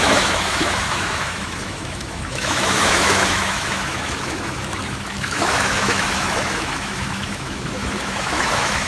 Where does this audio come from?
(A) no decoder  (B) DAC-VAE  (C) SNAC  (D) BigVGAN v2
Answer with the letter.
B